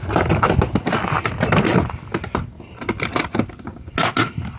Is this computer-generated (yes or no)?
no